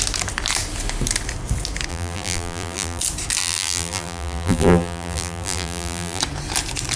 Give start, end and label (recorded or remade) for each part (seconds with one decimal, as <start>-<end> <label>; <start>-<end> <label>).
0.0-1.9 recorded; 1.9-3.0 remade; 3.0-3.4 recorded; 3.4-6.2 remade; 6.2-7.0 recorded